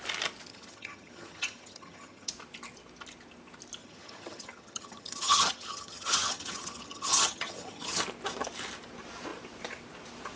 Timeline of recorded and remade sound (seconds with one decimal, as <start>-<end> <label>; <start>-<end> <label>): 0.0-0.5 recorded; 0.5-2.3 remade; 2.3-3.8 recorded; 3.8-8.0 remade; 8.0-10.4 recorded